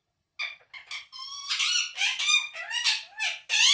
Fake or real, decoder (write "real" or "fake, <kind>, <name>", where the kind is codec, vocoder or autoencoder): real